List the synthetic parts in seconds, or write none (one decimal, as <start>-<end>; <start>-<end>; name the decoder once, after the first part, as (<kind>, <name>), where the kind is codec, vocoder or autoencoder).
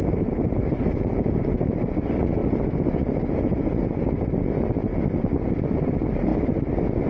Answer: 0.0-2.4 (vocoder, BigVGAN v2); 5.2-6.3